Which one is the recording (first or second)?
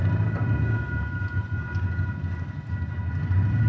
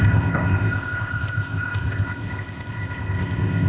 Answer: first